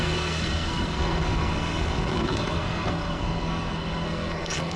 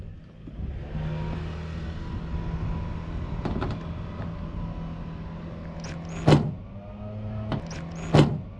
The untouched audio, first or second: second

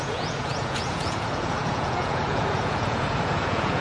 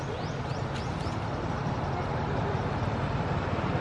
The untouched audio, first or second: second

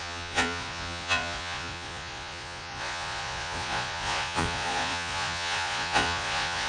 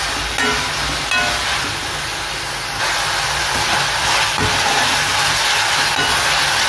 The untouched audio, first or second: second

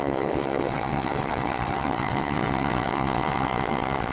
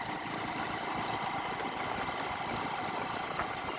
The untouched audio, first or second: second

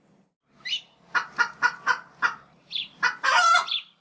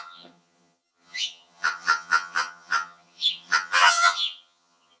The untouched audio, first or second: first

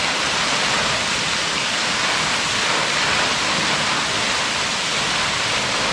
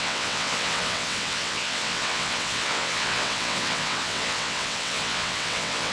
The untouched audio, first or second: first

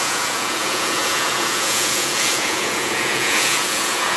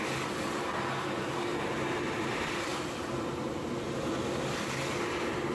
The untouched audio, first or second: second